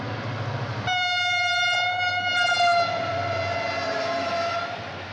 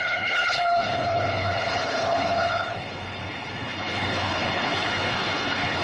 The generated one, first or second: second